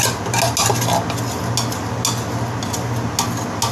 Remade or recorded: recorded